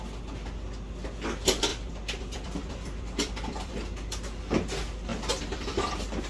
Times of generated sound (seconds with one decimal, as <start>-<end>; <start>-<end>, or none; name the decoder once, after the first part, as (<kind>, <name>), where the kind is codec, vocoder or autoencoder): 1.7-3.7 (vocoder, BigVGAN v2); 5.1-6.3